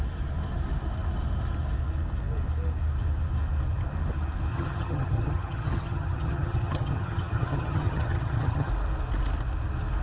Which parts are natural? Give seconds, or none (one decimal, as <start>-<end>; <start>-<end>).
0.0-4.5; 8.7-10.0

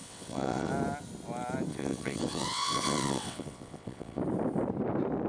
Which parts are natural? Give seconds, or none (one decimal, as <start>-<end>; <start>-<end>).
0.7-1.7; 4.2-5.3

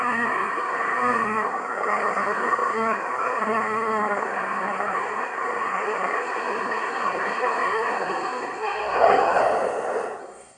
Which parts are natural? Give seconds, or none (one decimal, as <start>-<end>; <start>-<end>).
9.4-10.2

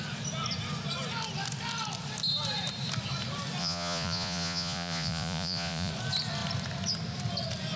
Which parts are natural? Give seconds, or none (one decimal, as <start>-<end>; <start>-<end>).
0.0-3.6; 5.9-7.8